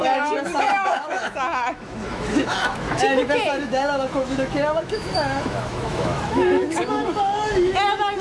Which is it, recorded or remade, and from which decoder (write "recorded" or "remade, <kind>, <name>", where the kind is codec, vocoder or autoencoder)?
remade, autoencoder, DAC-VAE